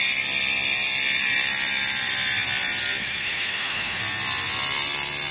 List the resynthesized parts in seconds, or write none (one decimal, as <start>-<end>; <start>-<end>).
3.0-4.0